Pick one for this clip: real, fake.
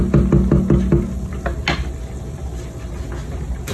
real